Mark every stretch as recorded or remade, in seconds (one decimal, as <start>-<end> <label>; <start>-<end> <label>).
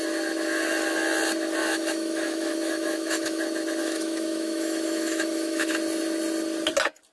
0.0-1.6 recorded; 1.6-3.4 remade; 3.4-3.8 recorded; 3.8-5.7 remade; 5.7-7.1 recorded